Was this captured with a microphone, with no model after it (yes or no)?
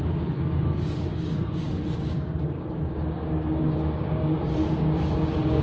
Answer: no